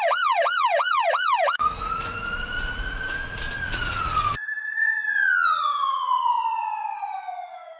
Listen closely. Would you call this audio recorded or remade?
remade